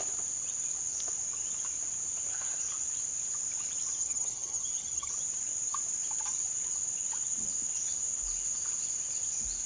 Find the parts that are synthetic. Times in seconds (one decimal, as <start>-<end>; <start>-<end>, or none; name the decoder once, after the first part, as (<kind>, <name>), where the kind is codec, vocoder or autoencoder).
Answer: 4.0-5.1 (vocoder, HiFi-GAN)

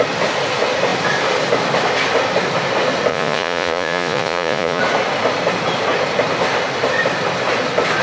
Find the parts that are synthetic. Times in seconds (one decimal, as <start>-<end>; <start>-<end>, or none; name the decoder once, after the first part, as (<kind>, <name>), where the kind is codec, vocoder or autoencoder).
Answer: 3.1-4.8 (vocoder, Vocos)

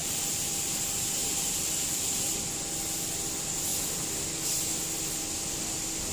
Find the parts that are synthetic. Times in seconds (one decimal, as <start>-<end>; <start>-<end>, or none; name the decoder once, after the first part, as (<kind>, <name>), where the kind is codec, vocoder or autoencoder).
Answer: 0.0-0.5 (vocoder, BigVGAN v2); 1.2-2.4

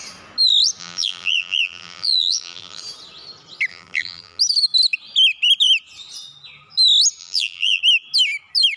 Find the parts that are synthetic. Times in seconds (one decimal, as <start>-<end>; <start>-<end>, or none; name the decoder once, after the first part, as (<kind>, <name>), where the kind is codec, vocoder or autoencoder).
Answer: 0.8-2.8 (vocoder, BigVGAN v2); 3.7-4.4; 7.2-7.8